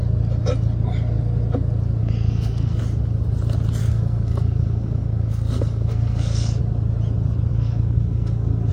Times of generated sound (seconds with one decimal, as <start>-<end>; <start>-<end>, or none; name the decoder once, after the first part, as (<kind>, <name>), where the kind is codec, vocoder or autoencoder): 2.0-2.8 (codec, SNAC); 3.8-6.6; 7.5-8.7